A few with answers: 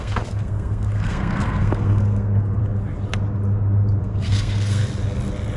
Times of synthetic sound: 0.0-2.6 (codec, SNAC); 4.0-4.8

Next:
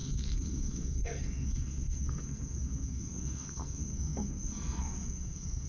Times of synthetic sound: 0.0-5.7 (codec, SNAC)

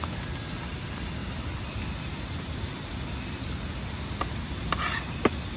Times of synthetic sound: none

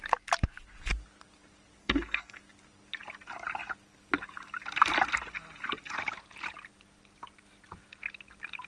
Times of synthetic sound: 1.8-2.4 (codec, SNAC)

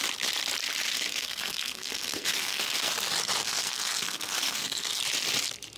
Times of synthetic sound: 0.9-2.9 (codec, SNAC); 3.4-5.0